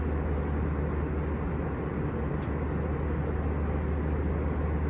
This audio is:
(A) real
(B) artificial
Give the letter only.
A